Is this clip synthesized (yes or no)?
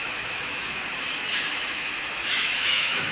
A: yes